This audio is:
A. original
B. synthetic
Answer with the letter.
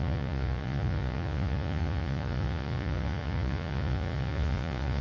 B